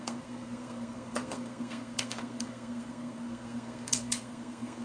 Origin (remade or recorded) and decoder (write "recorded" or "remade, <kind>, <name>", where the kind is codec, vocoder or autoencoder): remade, codec, SNAC